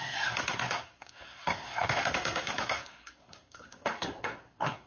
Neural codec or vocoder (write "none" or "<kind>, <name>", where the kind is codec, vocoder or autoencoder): codec, SNAC